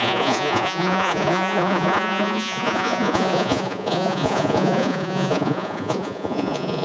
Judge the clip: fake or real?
fake